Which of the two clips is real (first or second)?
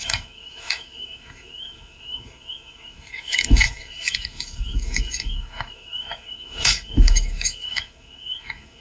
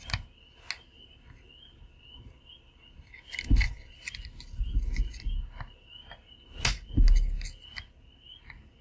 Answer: second